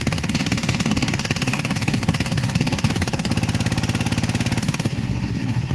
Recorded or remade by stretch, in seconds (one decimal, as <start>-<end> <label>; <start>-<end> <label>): 0.0-3.3 remade; 3.3-4.6 recorded; 4.6-5.7 remade